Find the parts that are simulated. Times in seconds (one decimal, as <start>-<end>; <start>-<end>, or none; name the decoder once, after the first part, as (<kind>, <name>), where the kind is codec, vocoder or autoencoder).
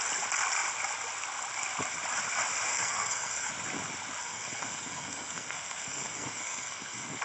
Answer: 2.7-3.5 (codec, SNAC); 4.2-7.2